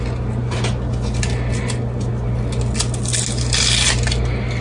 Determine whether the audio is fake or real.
real